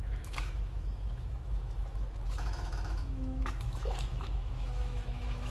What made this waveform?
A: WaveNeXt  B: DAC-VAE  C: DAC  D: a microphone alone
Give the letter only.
B